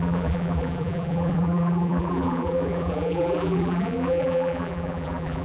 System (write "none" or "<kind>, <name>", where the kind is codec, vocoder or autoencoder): vocoder, BigVGAN v2